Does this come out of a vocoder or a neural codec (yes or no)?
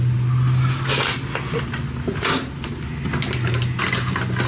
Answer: no